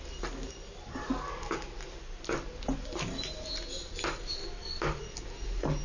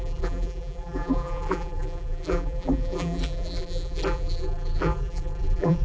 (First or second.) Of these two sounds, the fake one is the second